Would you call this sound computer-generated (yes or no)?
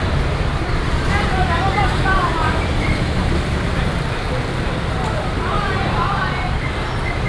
yes